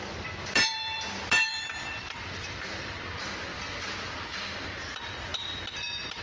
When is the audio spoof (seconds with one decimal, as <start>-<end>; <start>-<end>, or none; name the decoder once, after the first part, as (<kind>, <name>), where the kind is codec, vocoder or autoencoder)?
0.0-2.0 (vocoder, BigVGAN v2); 3.5-4.1